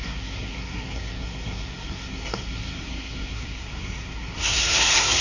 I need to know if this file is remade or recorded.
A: remade